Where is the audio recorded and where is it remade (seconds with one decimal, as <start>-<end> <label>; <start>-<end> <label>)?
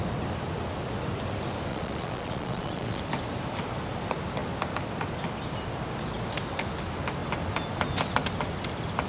0.0-1.7 recorded; 1.7-3.0 remade; 3.0-9.1 recorded